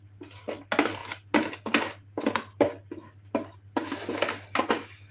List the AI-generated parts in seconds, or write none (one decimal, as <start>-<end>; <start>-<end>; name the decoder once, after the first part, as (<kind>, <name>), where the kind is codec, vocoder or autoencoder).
none